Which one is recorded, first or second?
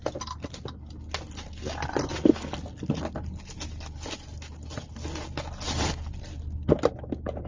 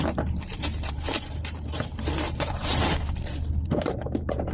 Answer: first